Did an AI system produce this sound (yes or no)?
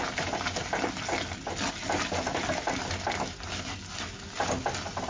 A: no